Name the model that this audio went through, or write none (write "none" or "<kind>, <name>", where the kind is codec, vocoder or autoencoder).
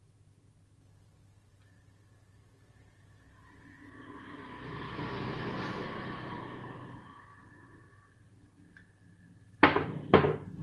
none